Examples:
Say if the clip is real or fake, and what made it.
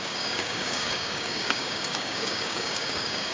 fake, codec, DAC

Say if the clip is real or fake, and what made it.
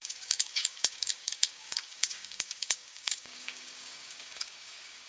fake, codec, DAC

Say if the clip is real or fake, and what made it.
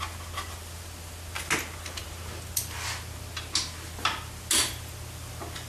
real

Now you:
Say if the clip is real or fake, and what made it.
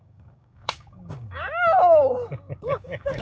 fake, codec, DAC